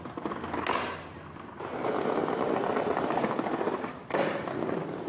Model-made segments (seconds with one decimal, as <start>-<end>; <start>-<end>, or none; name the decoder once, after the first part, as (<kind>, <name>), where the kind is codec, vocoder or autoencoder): none